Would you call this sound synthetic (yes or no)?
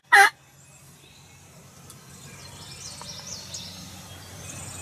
no